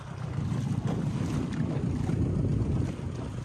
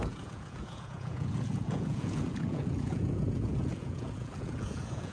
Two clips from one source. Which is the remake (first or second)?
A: second